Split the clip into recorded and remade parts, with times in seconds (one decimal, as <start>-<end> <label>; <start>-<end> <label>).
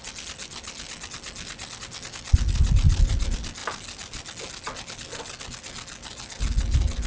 0.0-7.1 recorded